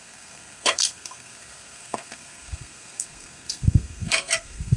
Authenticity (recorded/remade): remade